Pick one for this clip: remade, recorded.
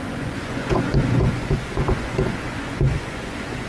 remade